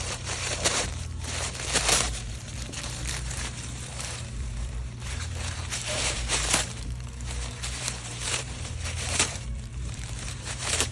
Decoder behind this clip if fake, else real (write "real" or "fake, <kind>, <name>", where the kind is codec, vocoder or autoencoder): fake, vocoder, BigVGAN v2